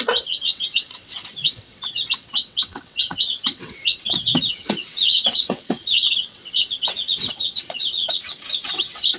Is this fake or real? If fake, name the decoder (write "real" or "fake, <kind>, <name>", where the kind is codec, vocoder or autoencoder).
fake, vocoder, WaveNeXt